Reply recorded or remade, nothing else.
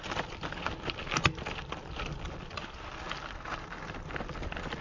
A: recorded